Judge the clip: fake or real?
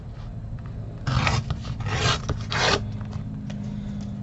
real